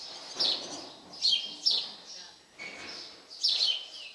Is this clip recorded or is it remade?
recorded